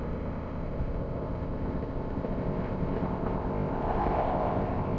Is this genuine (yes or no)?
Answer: no